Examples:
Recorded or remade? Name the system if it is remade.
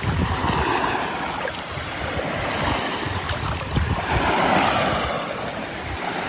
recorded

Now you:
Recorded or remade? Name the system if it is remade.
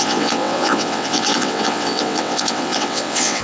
remade, vocoder, WaveNeXt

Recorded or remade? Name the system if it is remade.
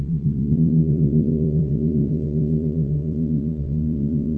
remade, vocoder, WaveNeXt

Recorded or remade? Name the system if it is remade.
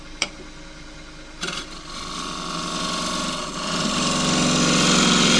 recorded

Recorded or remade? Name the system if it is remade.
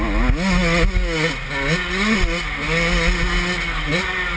recorded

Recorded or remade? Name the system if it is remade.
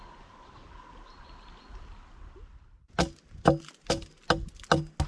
recorded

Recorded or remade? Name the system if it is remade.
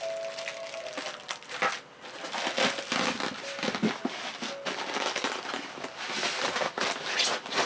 recorded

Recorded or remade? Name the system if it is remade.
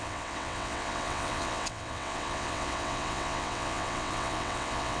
remade, vocoder, WaveNeXt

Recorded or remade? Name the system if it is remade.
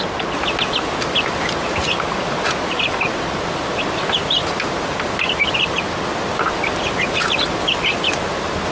recorded